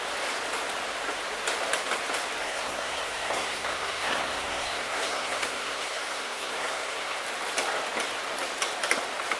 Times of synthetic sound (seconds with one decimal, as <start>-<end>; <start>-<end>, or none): 2.4-7.2